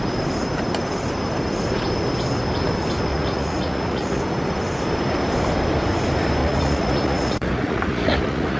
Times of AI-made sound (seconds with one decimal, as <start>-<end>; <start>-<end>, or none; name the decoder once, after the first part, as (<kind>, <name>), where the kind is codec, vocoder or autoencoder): 3.1-4.2 (vocoder, Vocos); 6.4-8.6